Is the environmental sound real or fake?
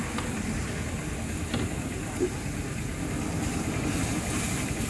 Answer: real